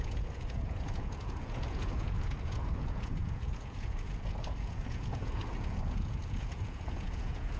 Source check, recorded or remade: remade